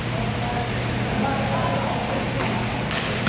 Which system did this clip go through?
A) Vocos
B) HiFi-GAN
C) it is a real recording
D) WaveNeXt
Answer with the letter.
C